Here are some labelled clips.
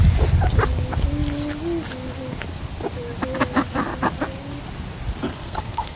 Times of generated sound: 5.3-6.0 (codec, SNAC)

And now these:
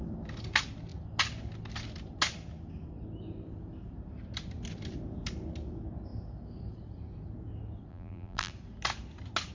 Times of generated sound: 7.9-8.5 (vocoder, BigVGAN v2)

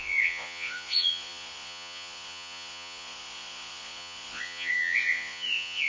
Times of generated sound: 0.0-5.9 (vocoder, Vocos)

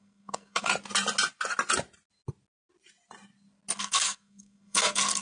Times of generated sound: 0.0-0.7 (codec, SNAC); 3.8-5.2

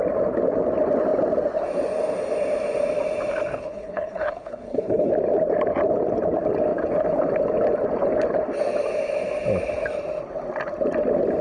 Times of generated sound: 3.5-5.1 (codec, HILCodec)